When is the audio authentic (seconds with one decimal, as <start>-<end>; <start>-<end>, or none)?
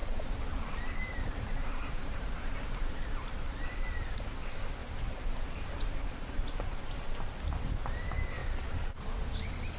3.6-4.8; 6.8-8.4; 9.1-9.8